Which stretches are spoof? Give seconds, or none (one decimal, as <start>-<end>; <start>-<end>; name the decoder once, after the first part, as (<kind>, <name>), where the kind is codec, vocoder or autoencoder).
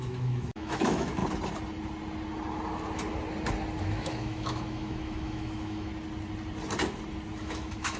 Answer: 0.0-1.2 (autoencoder, DAC-VAE); 3.8-5.9; 7.4-8.0